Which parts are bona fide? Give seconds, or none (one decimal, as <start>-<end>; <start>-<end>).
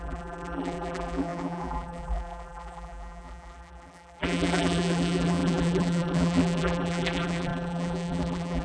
none